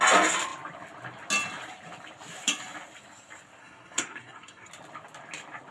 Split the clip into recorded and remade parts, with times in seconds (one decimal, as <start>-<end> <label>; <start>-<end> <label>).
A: 0.0-3.6 recorded; 3.6-4.7 remade; 4.7-5.7 recorded